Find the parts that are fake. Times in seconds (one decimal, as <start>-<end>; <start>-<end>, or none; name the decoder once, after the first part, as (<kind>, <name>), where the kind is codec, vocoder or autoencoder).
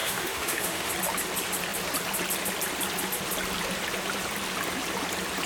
0.0-0.9 (autoencoder, DAC-VAE)